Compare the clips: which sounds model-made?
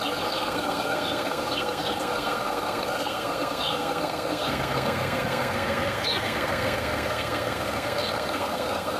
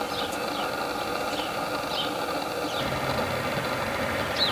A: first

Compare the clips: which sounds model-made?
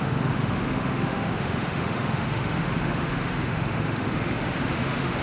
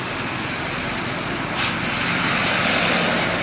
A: first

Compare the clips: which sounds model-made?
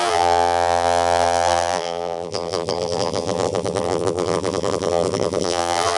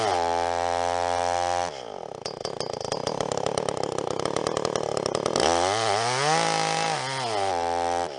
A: first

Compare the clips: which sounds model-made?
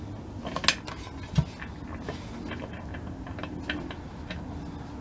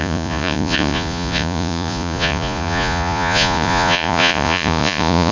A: second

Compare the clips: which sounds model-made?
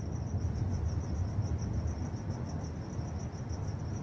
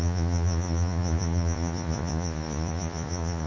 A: second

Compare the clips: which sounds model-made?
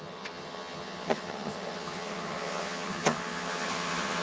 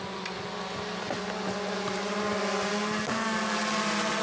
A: first